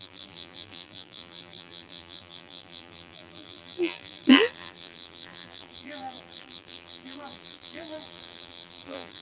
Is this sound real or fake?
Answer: fake